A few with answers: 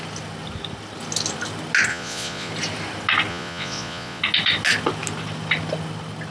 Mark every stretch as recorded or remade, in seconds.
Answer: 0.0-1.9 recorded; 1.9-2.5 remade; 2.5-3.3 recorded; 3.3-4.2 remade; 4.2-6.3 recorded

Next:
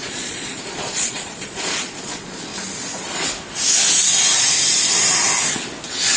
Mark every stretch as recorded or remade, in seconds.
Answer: 0.0-2.5 remade; 2.5-6.2 recorded

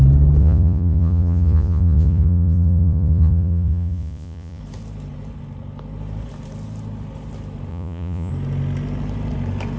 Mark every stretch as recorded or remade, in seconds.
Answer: 0.0-0.4 recorded; 0.4-4.6 remade; 4.6-7.7 recorded; 7.7-8.3 remade; 8.3-9.8 recorded

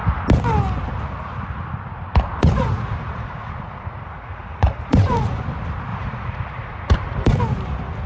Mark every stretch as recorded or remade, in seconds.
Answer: 0.0-2.3 recorded; 2.3-5.4 remade; 5.4-5.9 recorded; 5.9-7.4 remade; 7.4-8.1 recorded

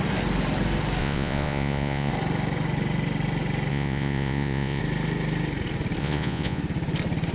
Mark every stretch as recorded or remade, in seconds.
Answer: 0.0-1.0 recorded; 1.0-2.1 remade; 2.1-3.7 recorded; 3.7-4.8 remade; 4.8-6.0 recorded; 6.0-6.6 remade; 6.6-7.3 recorded

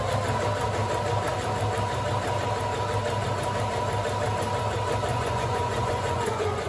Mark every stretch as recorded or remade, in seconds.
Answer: 0.0-5.1 recorded; 5.1-6.7 remade

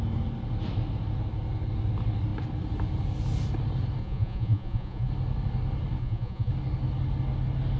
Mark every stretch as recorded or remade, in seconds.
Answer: 0.0-4.0 recorded; 4.0-5.1 remade; 5.1-6.0 recorded; 6.0-6.5 remade; 6.5-7.8 recorded